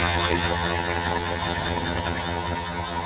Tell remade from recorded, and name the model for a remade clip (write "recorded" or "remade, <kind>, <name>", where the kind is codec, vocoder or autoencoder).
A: remade, vocoder, HiFi-GAN